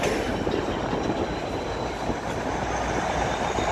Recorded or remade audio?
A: recorded